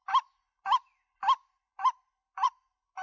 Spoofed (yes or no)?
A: no